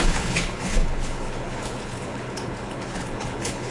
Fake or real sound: fake